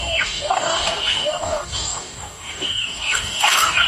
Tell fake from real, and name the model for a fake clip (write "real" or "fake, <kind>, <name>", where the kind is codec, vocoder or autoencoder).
fake, codec, DAC